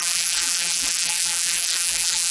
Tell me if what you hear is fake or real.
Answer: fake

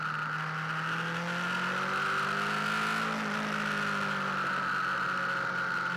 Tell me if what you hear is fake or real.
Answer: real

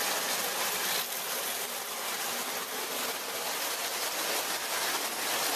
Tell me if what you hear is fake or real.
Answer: real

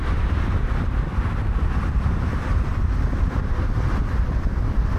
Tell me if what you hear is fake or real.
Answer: fake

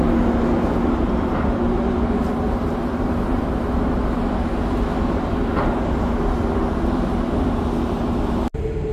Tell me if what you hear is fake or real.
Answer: real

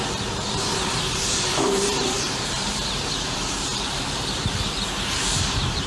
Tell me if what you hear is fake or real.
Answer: fake